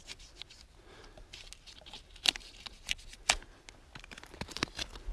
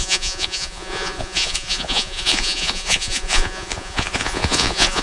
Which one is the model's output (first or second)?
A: second